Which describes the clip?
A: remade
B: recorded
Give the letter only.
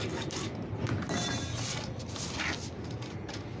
B